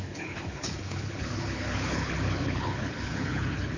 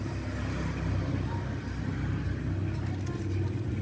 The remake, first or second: first